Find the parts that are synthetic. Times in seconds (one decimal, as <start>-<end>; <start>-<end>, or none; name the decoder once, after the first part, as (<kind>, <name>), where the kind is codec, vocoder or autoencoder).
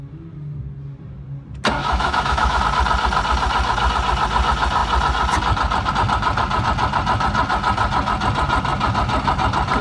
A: 1.8-2.6 (autoencoder, DAC-VAE)